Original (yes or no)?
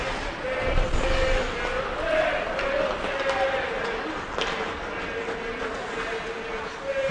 yes